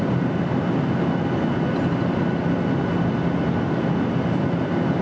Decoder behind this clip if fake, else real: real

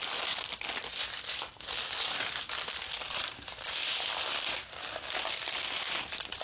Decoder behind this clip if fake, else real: real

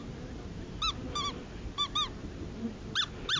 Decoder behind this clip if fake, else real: real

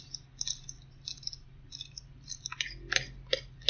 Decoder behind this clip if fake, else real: real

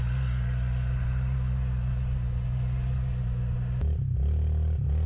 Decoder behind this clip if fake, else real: real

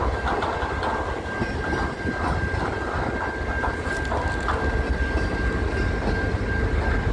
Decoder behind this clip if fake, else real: real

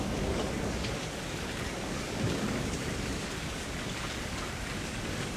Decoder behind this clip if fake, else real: fake, codec, DAC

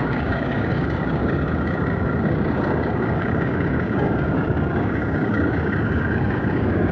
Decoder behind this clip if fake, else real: fake, codec, DAC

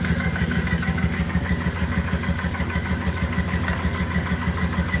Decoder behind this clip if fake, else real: fake, codec, DAC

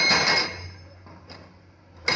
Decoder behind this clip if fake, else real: real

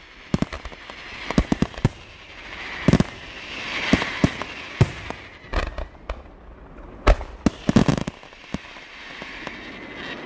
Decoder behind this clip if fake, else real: real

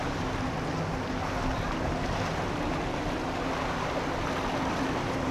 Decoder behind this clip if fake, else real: real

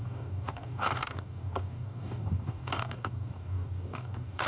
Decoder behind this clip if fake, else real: fake, codec, DAC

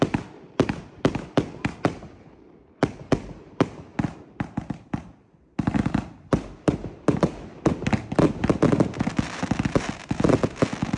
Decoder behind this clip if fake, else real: real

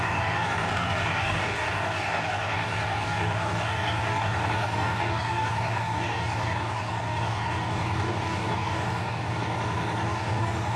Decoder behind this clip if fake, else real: fake, codec, DAC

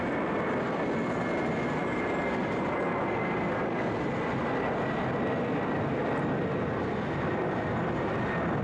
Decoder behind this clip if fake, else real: real